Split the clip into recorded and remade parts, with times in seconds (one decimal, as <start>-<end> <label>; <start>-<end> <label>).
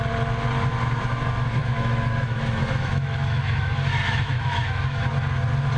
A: 0.0-0.7 recorded; 0.7-1.2 remade; 1.2-1.6 recorded; 1.6-5.1 remade; 5.1-5.8 recorded